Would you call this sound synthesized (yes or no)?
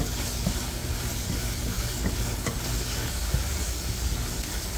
yes